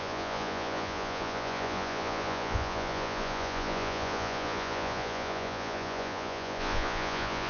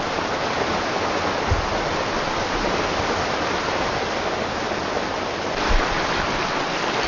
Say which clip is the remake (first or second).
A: first